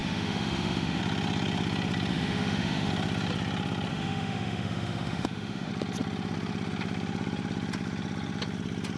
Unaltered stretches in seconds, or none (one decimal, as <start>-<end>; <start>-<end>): 1.0-2.1; 2.9-3.9; 5.7-9.0